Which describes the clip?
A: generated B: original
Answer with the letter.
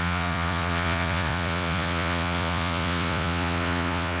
A